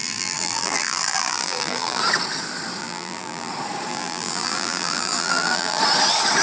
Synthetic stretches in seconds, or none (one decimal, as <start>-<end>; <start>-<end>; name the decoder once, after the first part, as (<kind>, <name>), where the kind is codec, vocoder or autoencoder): 0.0-2.0 (vocoder, BigVGAN v2); 2.8-3.5; 3.9-5.8